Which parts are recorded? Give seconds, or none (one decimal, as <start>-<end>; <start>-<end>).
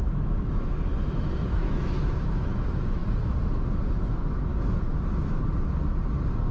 3.0-4.0; 4.5-6.5